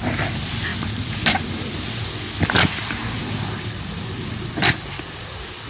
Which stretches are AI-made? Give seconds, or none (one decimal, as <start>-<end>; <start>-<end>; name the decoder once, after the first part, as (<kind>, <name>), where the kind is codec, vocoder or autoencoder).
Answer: none